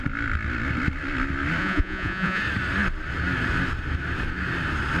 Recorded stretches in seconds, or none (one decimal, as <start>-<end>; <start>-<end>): 0.0-1.6; 2.4-5.0